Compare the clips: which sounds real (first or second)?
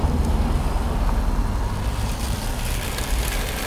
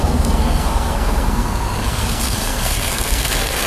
first